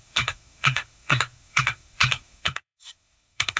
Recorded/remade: remade